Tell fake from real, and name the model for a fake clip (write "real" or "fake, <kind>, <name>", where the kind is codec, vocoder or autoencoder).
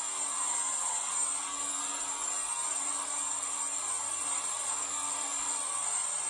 real